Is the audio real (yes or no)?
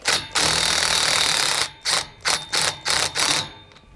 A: yes